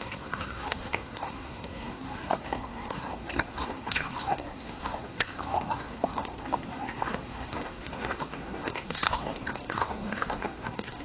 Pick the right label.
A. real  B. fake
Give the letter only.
B